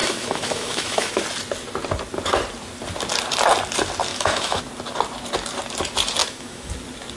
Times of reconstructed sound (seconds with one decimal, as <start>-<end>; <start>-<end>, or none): 0.0-1.2; 4.1-4.6; 6.2-6.7